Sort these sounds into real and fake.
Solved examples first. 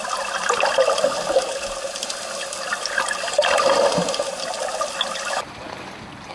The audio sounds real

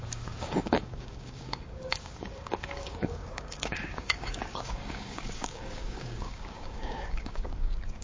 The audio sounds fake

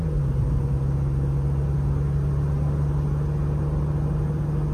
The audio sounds real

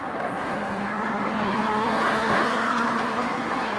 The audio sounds fake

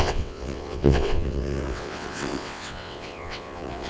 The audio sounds fake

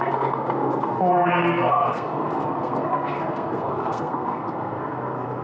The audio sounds fake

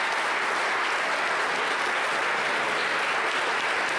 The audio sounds real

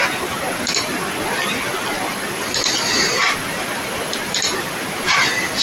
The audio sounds fake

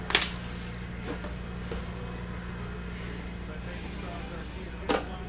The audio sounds real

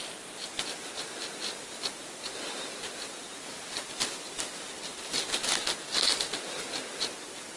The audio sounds real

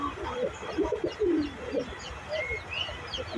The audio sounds real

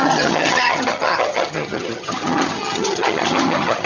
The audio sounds fake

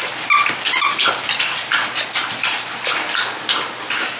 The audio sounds real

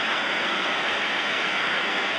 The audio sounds fake